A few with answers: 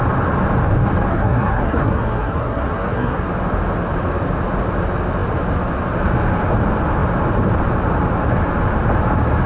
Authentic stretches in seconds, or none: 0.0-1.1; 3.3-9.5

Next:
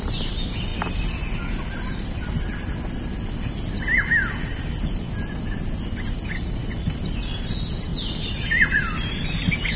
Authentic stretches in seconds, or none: 0.0-9.8

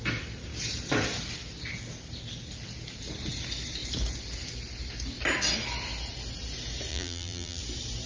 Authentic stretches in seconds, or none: 0.0-6.9; 7.6-8.1

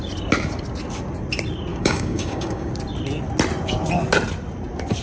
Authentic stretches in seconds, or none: 0.0-1.7; 2.7-5.0

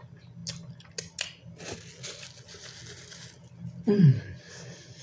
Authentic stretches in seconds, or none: 0.0-5.0